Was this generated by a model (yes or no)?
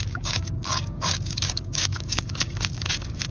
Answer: yes